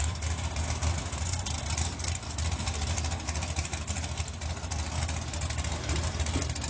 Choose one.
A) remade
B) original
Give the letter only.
B